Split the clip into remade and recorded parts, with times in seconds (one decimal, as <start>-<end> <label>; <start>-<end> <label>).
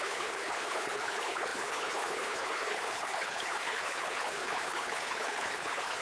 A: 0.0-6.0 remade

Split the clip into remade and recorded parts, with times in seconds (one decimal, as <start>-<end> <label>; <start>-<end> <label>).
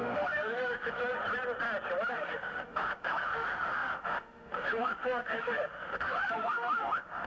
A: 0.0-1.0 remade; 1.0-2.1 recorded; 2.1-7.3 remade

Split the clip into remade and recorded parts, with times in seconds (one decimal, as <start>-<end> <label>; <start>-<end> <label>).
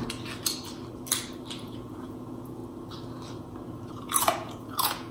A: 0.0-1.6 recorded; 1.6-2.6 remade; 2.6-3.9 recorded; 3.9-5.1 remade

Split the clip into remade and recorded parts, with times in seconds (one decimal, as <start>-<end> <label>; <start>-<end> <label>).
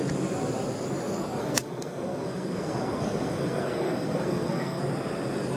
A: 0.0-1.4 recorded; 1.4-4.8 remade; 4.8-5.6 recorded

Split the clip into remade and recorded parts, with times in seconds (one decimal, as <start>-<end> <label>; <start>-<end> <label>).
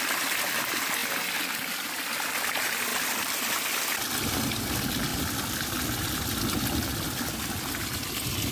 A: 0.0-8.5 recorded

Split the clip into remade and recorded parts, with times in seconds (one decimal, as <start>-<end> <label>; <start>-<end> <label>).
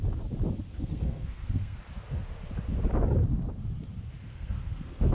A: 0.0-0.7 recorded; 0.7-1.8 remade; 1.8-4.3 recorded; 4.3-5.1 remade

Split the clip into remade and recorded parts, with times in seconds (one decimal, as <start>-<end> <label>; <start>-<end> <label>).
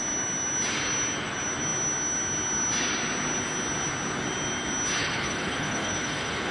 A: 0.0-5.0 recorded; 5.0-6.5 remade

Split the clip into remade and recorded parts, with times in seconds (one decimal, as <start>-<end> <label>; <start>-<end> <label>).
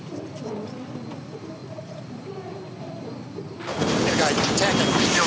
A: 0.0-5.3 recorded